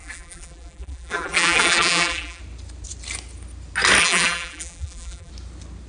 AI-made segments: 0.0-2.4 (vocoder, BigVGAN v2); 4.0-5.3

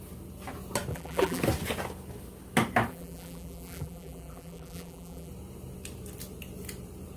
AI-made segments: 0.9-1.4 (vocoder, BigVGAN v2); 2.9-5.3

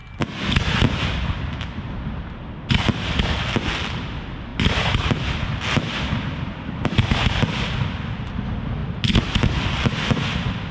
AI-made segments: none

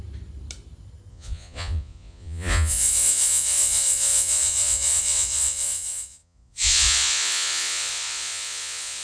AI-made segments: 1.1-9.0 (vocoder, Vocos)

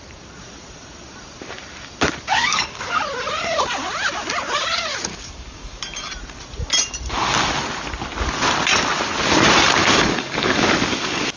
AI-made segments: 2.4-3.0 (codec, DAC); 5.1-5.8; 9.8-11.4

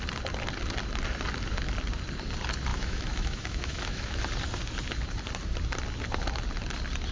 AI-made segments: 2.7-4.2 (autoencoder, DAC-VAE)

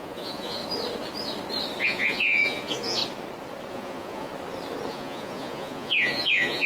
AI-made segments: 0.0-0.6 (vocoder, Vocos); 1.8-3.0; 3.7-4.3; 4.9-6.7

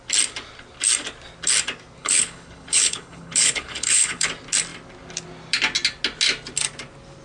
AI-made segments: 2.0-4.3 (codec, HILCodec)